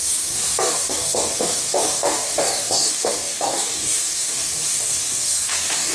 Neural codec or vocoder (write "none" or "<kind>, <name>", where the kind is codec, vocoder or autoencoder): codec, DAC